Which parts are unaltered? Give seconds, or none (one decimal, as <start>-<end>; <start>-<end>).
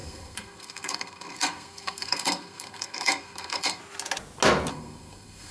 3.8-4.7